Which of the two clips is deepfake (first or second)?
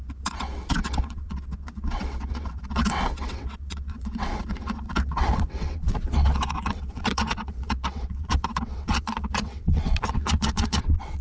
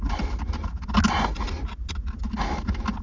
first